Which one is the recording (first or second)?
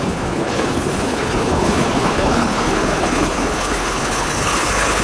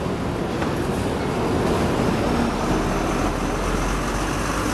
second